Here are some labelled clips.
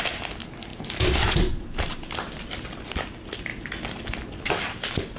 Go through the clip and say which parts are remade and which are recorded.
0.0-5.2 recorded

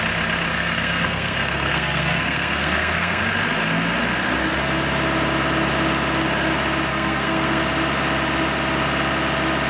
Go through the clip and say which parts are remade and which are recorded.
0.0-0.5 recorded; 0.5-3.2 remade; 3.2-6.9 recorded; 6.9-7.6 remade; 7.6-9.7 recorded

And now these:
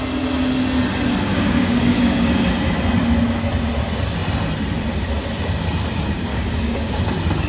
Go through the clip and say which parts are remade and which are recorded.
0.0-1.3 recorded; 1.3-2.5 remade; 2.5-6.3 recorded; 6.3-6.9 remade; 6.9-7.5 recorded

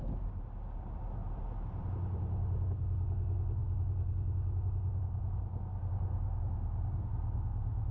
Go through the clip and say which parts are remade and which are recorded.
0.0-7.9 recorded

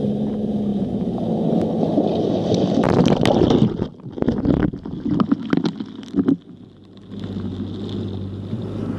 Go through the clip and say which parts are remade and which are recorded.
0.0-9.0 recorded

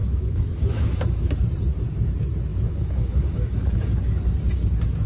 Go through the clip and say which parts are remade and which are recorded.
0.0-1.3 remade; 1.3-2.5 recorded; 2.5-3.9 remade; 3.9-5.1 recorded

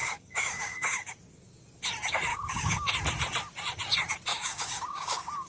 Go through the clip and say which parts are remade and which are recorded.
0.0-1.1 remade; 1.1-2.3 recorded; 2.3-2.9 remade; 2.9-4.3 recorded; 4.3-5.5 remade